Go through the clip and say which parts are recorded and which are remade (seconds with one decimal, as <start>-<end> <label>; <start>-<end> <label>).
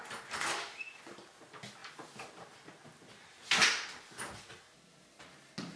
0.0-5.8 recorded